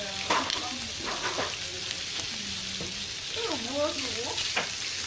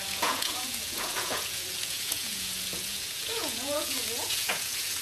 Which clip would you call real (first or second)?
first